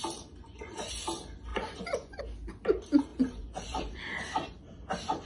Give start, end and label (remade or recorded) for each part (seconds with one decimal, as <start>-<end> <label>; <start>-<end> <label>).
0.0-0.4 recorded; 0.4-0.9 remade; 0.9-1.5 recorded; 1.5-2.2 remade; 2.2-3.1 recorded; 3.1-4.0 remade; 4.0-5.3 recorded